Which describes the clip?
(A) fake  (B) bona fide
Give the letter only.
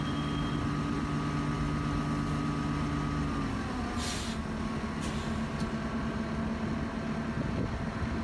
B